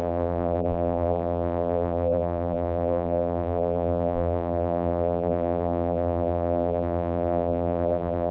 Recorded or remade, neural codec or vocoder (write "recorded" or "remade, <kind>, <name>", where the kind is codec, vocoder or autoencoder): remade, vocoder, BigVGAN v2